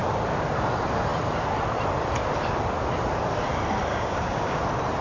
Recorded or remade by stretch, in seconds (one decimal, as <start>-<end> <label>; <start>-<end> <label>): 0.0-3.9 recorded; 3.9-4.6 remade; 4.6-5.0 recorded